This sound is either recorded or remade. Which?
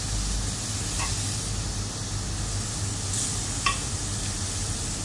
recorded